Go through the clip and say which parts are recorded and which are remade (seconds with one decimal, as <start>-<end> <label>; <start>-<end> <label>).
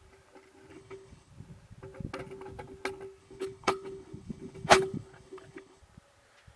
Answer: 0.0-0.7 recorded; 0.7-1.3 remade; 1.3-3.2 recorded; 3.2-5.8 remade; 5.8-6.6 recorded